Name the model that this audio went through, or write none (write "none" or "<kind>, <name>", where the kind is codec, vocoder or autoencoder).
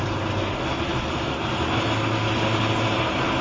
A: none